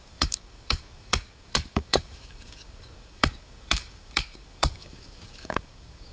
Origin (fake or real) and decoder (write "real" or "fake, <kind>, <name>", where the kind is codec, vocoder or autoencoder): fake, codec, DAC